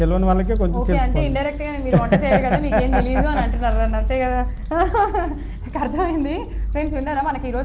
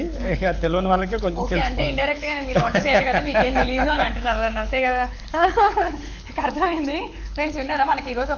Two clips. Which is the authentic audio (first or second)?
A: first